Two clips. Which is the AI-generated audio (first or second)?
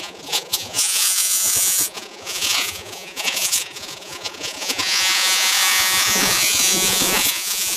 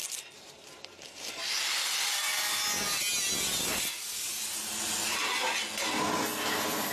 first